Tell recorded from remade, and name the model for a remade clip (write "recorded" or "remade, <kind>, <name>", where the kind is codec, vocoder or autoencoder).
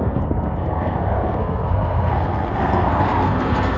remade, codec, SNAC